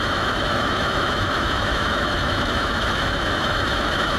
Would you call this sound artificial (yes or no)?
yes